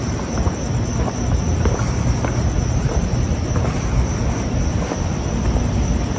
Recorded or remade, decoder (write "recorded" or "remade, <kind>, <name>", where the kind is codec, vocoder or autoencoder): recorded